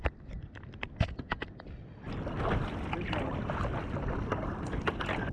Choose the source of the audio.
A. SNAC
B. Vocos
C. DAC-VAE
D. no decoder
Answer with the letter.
D